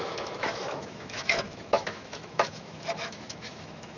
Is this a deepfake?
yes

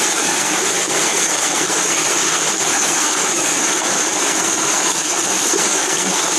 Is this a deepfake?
yes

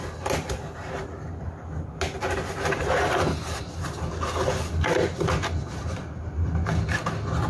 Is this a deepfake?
no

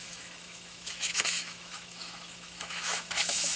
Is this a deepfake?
yes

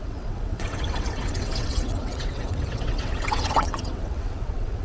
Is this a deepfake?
yes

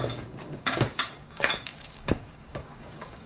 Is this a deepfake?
yes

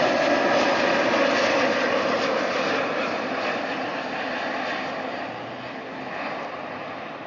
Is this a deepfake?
no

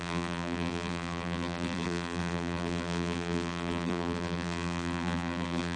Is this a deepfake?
yes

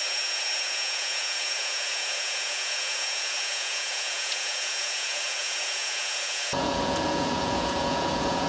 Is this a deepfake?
yes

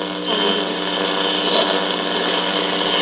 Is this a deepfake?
no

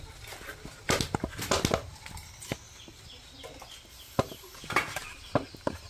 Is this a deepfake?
no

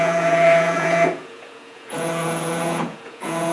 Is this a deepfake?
yes